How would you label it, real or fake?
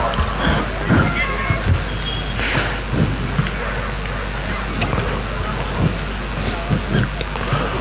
real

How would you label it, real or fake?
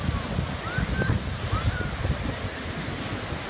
real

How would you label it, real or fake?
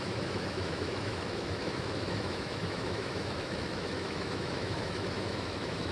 fake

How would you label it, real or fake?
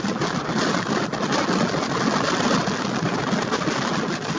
real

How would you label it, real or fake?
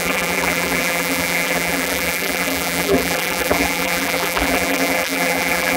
fake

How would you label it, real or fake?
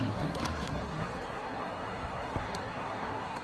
fake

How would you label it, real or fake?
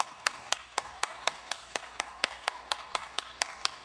fake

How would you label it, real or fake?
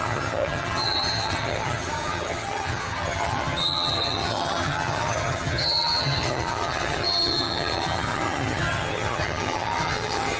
fake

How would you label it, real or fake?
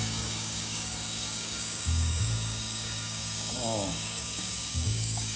fake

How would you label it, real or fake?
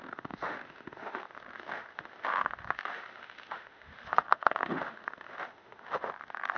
fake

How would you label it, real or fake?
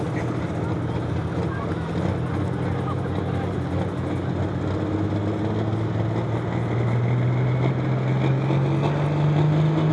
real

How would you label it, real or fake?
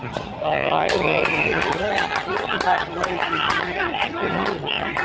fake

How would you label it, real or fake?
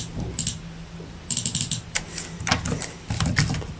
real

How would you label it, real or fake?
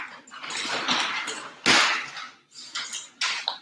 real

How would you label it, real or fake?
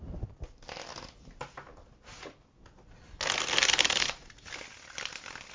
real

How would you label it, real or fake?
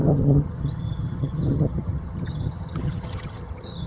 fake